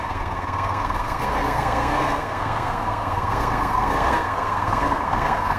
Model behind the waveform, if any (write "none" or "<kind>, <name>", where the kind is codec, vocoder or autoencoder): codec, SNAC